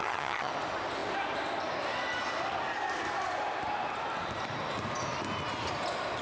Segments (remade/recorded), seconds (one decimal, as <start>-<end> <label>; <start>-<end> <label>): 0.0-0.5 remade; 0.5-6.2 recorded